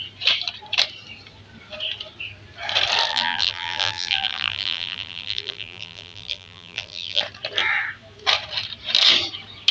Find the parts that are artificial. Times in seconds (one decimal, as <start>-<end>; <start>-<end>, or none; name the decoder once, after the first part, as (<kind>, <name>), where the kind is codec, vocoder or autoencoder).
3.1-7.2 (vocoder, BigVGAN v2)